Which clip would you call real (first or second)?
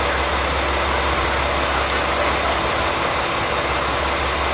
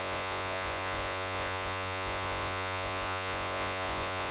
first